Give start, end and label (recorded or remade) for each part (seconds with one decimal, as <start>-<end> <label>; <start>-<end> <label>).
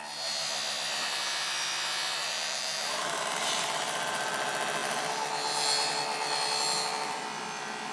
0.0-2.2 recorded; 2.2-4.3 remade; 4.3-7.9 recorded